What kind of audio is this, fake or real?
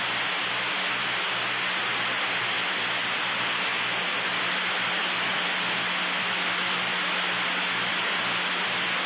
real